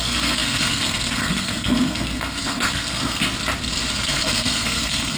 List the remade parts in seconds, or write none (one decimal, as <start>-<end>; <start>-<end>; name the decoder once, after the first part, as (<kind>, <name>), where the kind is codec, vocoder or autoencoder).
0.0-3.2 (codec, SNAC); 3.9-5.2

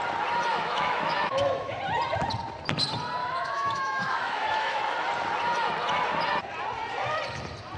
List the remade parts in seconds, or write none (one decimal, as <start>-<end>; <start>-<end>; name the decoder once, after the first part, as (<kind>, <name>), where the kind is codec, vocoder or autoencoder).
0.5-1.8 (autoencoder, DAC-VAE); 3.2-4.8